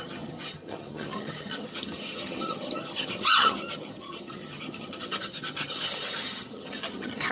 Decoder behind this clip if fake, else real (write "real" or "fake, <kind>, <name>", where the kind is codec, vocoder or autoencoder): fake, vocoder, HiFi-GAN